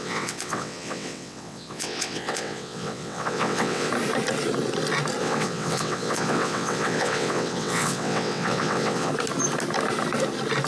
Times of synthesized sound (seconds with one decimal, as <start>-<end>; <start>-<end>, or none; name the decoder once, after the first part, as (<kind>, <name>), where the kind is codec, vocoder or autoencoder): 0.0-3.9 (vocoder, WaveNeXt); 5.2-9.1